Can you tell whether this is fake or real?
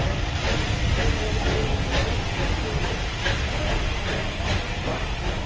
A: real